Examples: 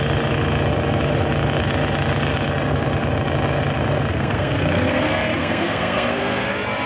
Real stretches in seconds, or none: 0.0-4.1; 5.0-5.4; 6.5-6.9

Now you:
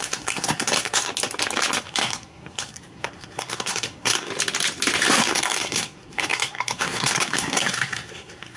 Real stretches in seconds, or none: 1.1-1.8; 4.3-5.1

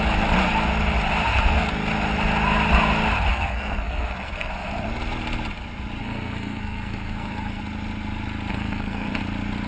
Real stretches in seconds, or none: 0.0-3.3; 4.5-6.0; 7.6-8.5; 9.2-9.7